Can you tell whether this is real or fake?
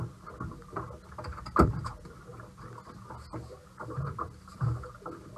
real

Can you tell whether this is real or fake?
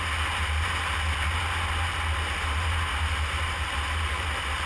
real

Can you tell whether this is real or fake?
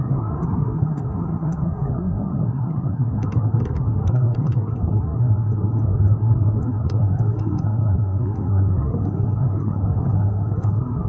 fake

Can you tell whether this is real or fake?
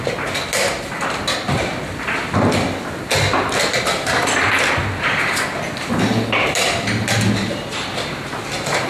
real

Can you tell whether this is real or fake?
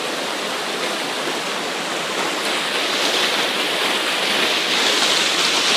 real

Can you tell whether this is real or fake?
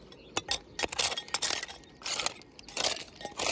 real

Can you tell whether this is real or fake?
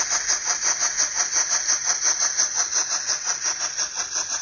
real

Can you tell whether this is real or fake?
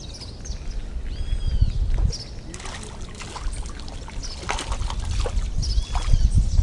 real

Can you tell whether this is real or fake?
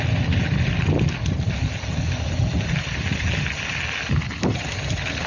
real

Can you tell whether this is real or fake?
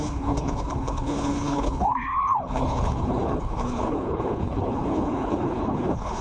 fake